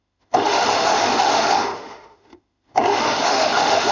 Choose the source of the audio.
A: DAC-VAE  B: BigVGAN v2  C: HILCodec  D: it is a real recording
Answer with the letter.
A